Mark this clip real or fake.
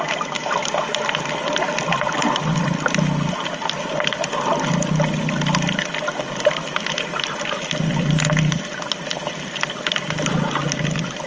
real